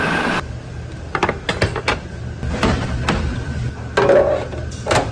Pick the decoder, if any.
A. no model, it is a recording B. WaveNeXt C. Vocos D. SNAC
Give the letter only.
A